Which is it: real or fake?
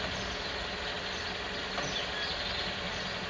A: real